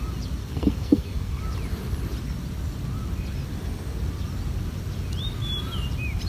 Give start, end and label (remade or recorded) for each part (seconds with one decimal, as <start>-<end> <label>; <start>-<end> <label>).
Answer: 0.0-0.4 recorded; 0.4-1.4 remade; 1.4-6.3 recorded